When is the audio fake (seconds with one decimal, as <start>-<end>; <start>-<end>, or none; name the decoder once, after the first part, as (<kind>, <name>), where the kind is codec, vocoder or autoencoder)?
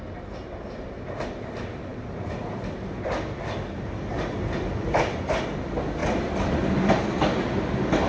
none